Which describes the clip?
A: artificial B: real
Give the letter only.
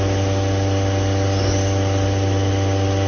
B